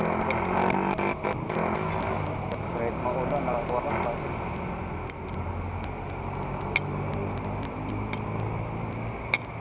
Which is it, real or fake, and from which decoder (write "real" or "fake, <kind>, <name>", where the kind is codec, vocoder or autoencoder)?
real